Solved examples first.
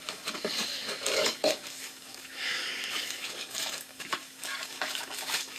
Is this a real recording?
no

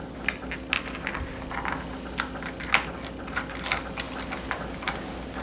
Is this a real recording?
yes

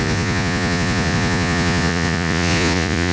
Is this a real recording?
no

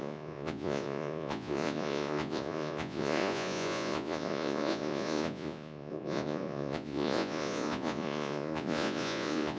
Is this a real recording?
no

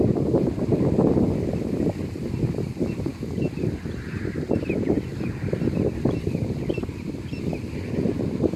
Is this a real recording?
yes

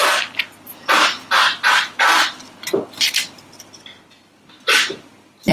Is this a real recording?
yes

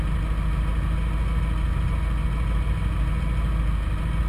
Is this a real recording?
yes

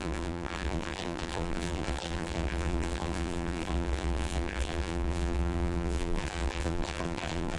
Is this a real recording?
no